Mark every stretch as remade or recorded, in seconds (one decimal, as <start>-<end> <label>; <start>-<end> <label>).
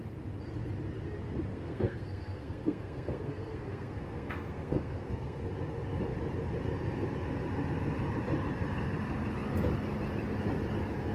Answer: 0.0-1.5 recorded; 1.5-5.4 remade; 5.4-11.1 recorded